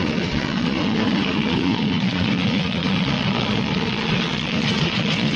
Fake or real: fake